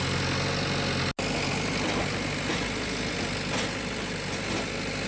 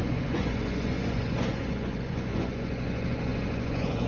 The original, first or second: first